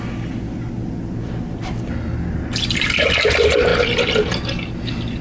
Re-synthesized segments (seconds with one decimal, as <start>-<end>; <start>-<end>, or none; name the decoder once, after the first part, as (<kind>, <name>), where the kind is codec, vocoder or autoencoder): none